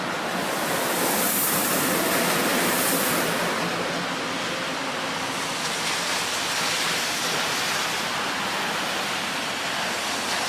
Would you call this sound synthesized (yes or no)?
no